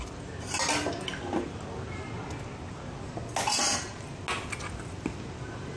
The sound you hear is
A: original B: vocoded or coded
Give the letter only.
A